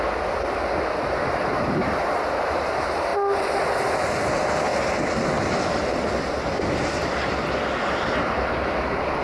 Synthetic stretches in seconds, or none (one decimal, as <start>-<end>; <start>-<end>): none